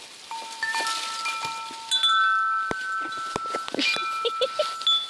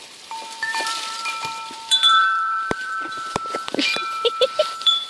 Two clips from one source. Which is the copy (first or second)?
second